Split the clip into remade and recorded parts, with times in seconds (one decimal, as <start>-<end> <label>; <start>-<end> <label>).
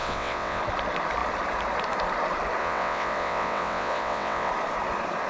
0.0-0.6 remade; 0.6-2.6 recorded; 2.6-4.5 remade; 4.5-5.3 recorded